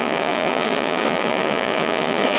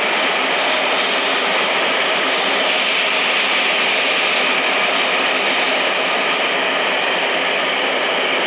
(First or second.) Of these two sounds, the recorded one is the second